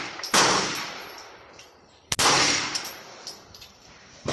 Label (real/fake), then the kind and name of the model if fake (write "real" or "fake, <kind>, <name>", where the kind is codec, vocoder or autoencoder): fake, vocoder, BigVGAN v2